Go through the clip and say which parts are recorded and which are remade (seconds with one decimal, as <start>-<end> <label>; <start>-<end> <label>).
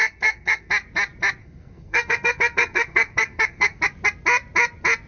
0.0-0.7 remade; 0.7-1.4 recorded; 1.4-3.8 remade; 3.8-5.1 recorded